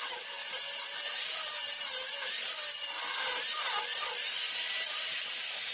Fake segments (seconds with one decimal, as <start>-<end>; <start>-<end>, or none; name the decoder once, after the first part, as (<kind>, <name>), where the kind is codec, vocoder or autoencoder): none